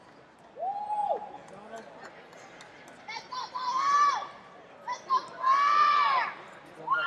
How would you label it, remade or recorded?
recorded